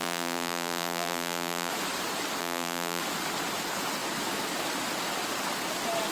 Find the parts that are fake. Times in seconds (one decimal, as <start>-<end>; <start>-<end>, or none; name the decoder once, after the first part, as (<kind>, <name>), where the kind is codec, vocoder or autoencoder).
0.0-1.7 (vocoder, BigVGAN v2); 2.4-3.0